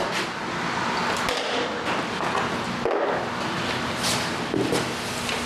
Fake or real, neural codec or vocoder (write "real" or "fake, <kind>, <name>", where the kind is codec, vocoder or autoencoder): real